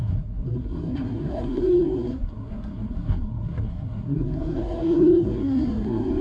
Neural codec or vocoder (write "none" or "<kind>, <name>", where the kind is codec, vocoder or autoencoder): codec, SNAC